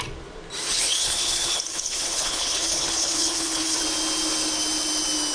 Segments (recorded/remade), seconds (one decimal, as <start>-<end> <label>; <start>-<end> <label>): 0.0-0.6 recorded; 0.6-3.8 remade; 3.8-5.3 recorded